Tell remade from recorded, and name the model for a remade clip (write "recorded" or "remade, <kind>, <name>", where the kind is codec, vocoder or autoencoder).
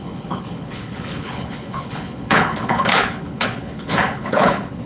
remade, codec, HILCodec